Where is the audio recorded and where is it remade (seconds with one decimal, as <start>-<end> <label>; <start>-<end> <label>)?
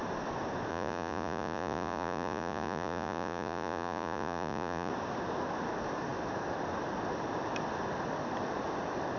0.0-0.7 recorded; 0.7-4.9 remade; 4.9-9.2 recorded